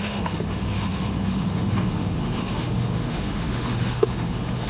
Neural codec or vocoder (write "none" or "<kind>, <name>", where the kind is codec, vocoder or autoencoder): autoencoder, DAC-VAE